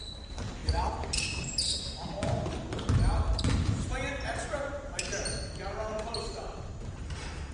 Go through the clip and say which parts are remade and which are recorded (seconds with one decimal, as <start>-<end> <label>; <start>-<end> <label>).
0.0-0.6 recorded; 0.6-4.6 remade; 4.6-6.7 recorded; 6.7-7.5 remade